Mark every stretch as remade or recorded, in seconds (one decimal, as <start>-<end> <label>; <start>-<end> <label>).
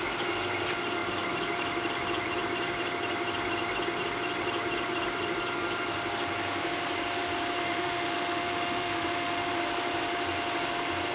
0.0-7.6 recorded; 7.6-9.6 remade; 9.6-11.1 recorded